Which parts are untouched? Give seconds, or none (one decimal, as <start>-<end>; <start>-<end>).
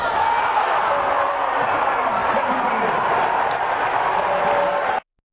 0.0-5.3